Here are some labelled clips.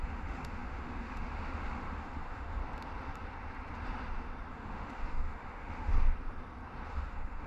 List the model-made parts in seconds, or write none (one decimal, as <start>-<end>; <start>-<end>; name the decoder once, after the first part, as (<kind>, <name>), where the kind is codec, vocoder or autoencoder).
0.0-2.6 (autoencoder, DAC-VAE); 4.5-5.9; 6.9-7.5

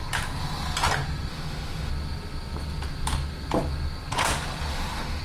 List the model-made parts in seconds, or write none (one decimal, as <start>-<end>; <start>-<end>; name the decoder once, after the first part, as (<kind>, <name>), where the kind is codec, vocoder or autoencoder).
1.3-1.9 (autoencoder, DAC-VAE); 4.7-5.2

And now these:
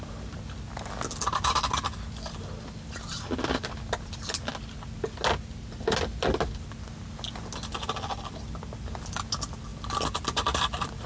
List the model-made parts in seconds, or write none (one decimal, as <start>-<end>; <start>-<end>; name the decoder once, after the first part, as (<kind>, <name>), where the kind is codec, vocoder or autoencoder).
none

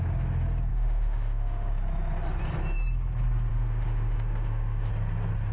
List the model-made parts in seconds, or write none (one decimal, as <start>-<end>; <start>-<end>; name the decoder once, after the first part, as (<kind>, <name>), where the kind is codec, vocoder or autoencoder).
0.7-1.7 (autoencoder, DAC-VAE); 3.5-4.9

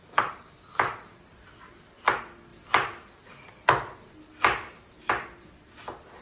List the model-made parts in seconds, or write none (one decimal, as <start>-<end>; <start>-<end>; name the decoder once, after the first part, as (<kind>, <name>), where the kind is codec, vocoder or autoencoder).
none